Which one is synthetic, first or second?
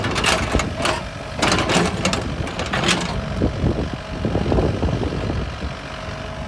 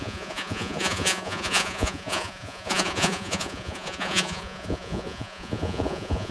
second